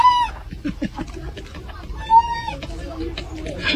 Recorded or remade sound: recorded